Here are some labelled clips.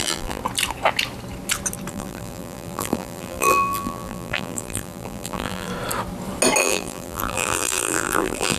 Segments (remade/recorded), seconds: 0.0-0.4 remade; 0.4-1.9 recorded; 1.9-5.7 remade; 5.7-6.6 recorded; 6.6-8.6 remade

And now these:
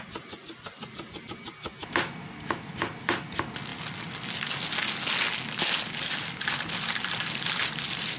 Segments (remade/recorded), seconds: 0.0-8.2 recorded

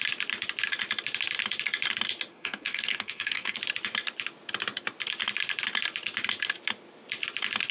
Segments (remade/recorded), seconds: 0.0-2.3 recorded; 2.3-3.6 remade; 3.6-7.7 recorded

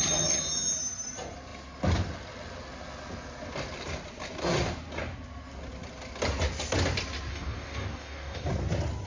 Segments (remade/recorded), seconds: 0.0-7.3 recorded; 7.3-8.5 remade; 8.5-9.1 recorded

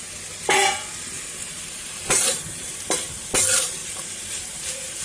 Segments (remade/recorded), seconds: 0.0-0.6 recorded; 0.6-2.7 remade; 2.7-3.8 recorded; 3.8-4.5 remade; 4.5-5.0 recorded